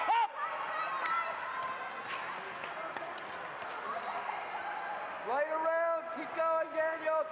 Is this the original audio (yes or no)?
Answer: yes